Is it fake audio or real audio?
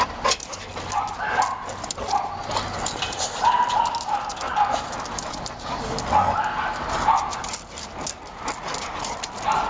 real